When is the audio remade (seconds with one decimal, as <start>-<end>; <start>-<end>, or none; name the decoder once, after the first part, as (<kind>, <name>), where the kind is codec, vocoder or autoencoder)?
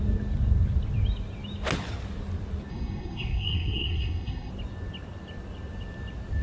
2.7-4.5 (codec, SNAC)